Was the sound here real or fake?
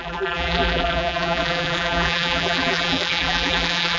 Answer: fake